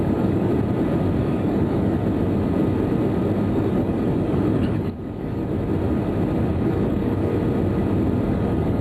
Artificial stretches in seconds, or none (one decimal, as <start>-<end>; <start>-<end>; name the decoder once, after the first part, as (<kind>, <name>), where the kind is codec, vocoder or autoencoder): 0.0-0.5 (codec, DAC); 1.2-2.0; 3.5-5.4; 6.5-7.3; 8.3-8.8